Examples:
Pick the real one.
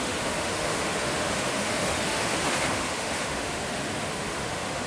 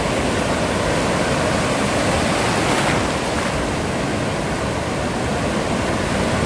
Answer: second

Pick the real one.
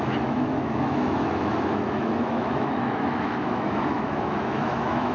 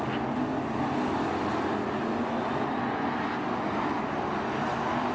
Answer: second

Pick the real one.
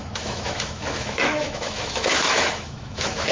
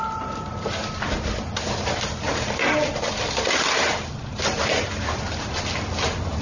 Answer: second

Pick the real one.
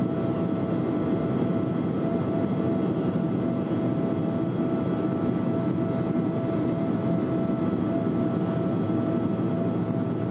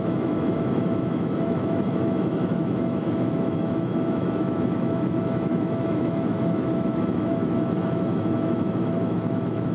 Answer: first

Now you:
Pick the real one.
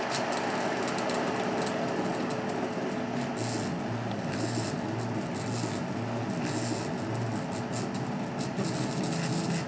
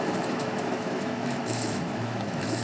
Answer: first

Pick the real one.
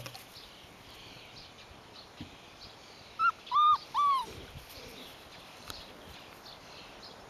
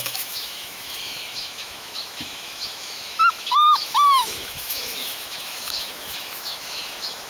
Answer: first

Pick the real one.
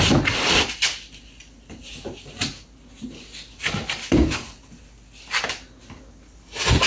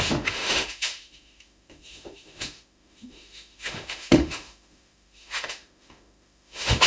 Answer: first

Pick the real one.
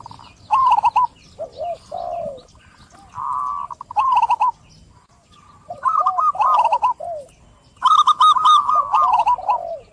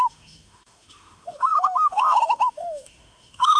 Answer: first